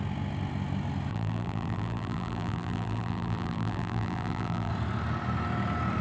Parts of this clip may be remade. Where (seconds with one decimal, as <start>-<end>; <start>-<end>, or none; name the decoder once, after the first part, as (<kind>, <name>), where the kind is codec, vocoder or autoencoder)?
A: 1.1-4.7 (vocoder, BigVGAN v2)